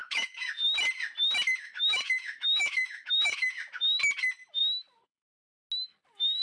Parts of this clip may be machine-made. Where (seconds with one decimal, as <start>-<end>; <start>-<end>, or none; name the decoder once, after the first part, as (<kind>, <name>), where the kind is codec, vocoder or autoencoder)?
0.0-0.5 (autoencoder, DAC-VAE); 1.6-3.5